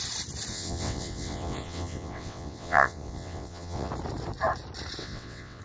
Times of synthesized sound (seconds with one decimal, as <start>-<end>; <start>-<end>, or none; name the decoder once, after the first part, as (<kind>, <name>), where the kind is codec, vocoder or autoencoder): 0.5-3.9 (vocoder, WaveNeXt); 5.0-5.6